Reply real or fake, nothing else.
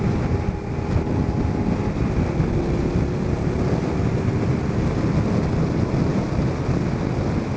real